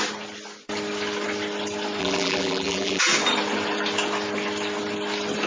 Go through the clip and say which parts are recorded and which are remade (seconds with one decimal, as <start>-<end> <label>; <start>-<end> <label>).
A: 0.0-2.0 recorded; 2.0-3.0 remade; 3.0-5.5 recorded